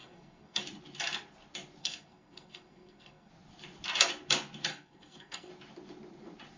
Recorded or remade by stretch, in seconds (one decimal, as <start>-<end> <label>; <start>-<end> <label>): 0.0-0.6 remade; 0.6-1.8 recorded; 1.8-3.3 remade; 3.3-4.7 recorded; 4.7-5.5 remade; 5.5-6.6 recorded

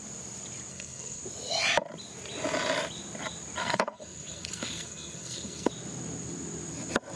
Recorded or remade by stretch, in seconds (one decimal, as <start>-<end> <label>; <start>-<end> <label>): 0.0-0.7 recorded; 0.7-1.2 remade; 1.2-3.6 recorded; 3.6-5.7 remade; 5.7-7.2 recorded

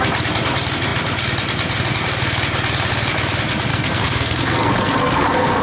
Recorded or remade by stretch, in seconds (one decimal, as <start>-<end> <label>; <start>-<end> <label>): 0.0-3.7 recorded; 3.7-5.6 remade